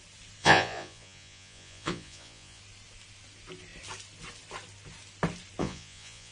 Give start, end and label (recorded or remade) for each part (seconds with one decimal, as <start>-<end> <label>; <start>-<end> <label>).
0.0-0.4 recorded; 0.4-2.6 remade; 2.6-5.6 recorded; 5.6-6.3 remade